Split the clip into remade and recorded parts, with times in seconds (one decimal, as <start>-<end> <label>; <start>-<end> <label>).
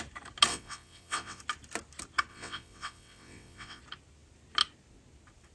0.0-0.5 recorded; 0.5-1.4 remade; 1.4-2.3 recorded; 2.3-3.8 remade; 3.8-5.5 recorded